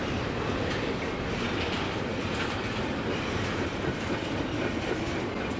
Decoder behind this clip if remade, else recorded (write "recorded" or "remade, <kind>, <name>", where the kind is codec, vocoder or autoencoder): recorded